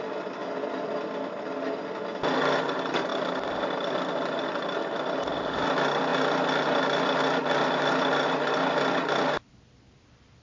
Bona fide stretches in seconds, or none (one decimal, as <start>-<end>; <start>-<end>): 0.0-10.4